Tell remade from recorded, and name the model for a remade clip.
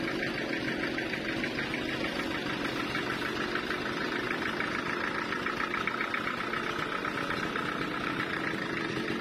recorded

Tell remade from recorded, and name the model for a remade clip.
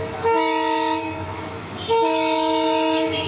remade, autoencoder, DAC-VAE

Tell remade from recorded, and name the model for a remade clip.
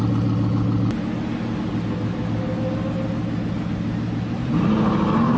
recorded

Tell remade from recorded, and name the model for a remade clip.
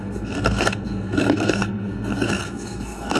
remade, codec, SNAC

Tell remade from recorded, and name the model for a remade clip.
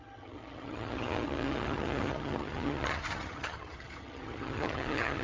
remade, vocoder, HiFi-GAN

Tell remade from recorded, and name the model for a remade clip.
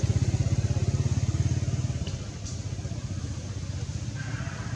recorded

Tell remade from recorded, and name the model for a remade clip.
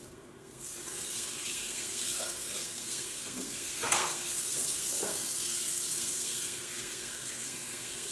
remade, codec, SNAC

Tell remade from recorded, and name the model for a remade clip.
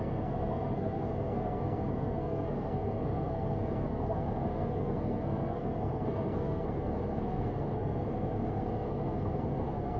remade, codec, SNAC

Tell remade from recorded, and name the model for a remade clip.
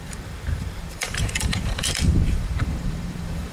remade, vocoder, BigVGAN v2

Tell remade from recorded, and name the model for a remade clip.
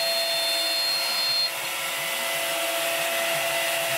recorded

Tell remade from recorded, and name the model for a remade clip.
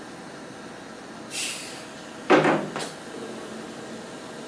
recorded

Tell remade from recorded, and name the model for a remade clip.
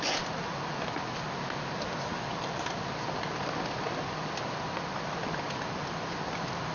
recorded